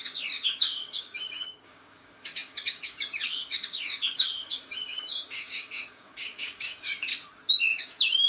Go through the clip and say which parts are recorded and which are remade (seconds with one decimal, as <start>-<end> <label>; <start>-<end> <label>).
0.0-7.1 remade; 7.1-7.6 recorded; 7.6-8.3 remade